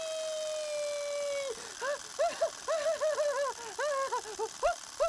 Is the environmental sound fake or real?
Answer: real